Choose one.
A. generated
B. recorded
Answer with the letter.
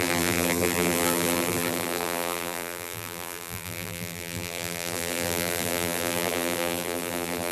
A